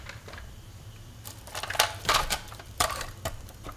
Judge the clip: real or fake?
fake